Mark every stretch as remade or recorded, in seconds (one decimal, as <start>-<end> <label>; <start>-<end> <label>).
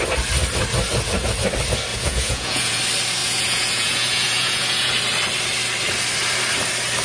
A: 0.0-1.9 recorded; 1.9-2.8 remade; 2.8-3.2 recorded; 3.2-4.9 remade; 4.9-7.0 recorded